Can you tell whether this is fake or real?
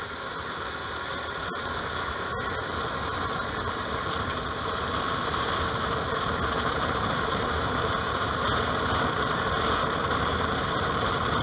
fake